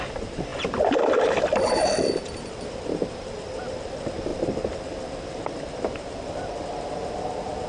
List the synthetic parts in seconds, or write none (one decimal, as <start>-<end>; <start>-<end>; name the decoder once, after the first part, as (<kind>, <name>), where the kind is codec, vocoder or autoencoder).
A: 0.5-1.9 (vocoder, BigVGAN v2)